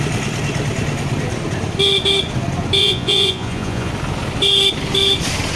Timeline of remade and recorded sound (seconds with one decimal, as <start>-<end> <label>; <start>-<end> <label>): 0.0-2.8 recorded; 2.8-3.9 remade; 3.9-5.6 recorded